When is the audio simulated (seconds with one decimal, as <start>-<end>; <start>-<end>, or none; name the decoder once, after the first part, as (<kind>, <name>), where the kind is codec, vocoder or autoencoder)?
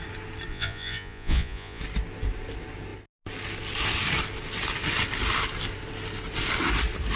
0.5-1.8 (vocoder, Vocos)